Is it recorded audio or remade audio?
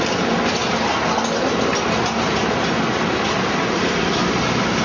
recorded